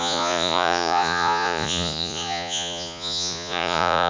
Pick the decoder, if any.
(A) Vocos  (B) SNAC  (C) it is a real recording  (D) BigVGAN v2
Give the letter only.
A